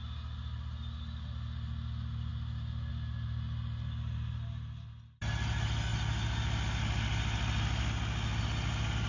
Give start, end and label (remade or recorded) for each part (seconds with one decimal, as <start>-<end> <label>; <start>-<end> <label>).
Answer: 0.0-9.1 recorded